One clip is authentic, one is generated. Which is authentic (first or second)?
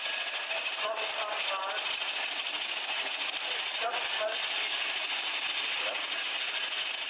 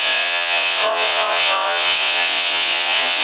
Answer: first